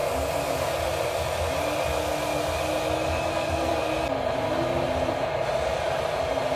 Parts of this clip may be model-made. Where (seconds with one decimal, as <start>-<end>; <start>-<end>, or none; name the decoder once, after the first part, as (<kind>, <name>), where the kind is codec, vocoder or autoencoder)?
3.3-3.7 (codec, SNAC)